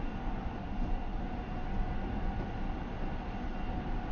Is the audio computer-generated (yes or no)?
no